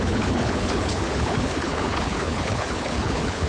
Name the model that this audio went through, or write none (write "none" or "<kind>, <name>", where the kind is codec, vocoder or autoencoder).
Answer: codec, HILCodec